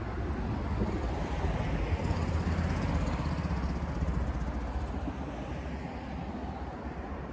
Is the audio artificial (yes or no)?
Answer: no